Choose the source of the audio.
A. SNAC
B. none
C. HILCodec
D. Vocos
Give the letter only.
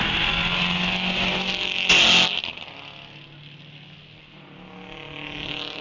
B